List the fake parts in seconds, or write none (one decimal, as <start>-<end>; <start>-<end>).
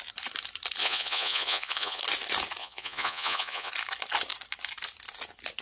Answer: 0.8-2.0; 2.6-3.7